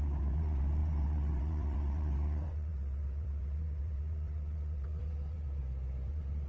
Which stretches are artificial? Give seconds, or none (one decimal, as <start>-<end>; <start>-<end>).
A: 0.0-5.6; 6.1-6.5